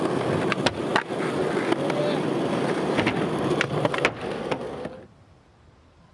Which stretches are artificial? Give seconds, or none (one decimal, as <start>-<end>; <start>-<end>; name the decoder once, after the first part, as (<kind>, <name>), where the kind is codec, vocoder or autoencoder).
none